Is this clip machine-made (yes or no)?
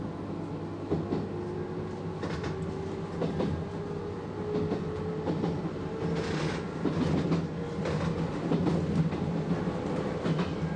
no